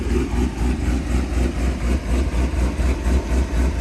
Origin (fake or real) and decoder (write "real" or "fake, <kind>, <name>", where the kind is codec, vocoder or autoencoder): real